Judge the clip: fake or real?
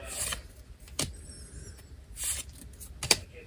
real